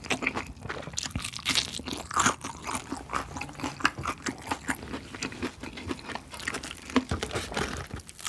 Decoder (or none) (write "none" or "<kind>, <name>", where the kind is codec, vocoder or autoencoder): none